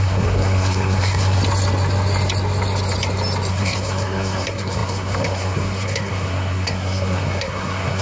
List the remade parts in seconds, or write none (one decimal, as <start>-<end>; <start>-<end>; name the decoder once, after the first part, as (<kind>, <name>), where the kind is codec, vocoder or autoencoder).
0.0-1.4 (codec, SNAC); 3.5-8.0